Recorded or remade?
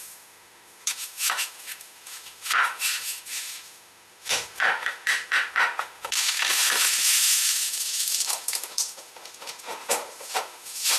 remade